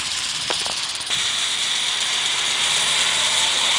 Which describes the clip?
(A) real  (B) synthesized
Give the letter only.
B